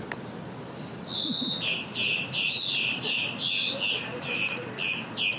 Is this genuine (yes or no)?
yes